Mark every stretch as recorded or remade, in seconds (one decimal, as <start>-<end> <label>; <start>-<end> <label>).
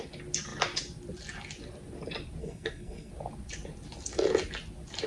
0.0-2.4 recorded; 2.4-3.1 remade; 3.1-5.1 recorded